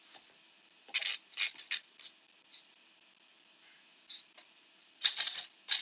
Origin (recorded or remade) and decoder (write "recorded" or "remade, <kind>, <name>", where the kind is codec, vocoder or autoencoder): recorded